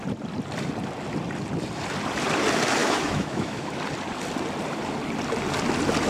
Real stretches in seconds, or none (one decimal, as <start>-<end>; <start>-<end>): 0.0-2.8; 3.8-6.1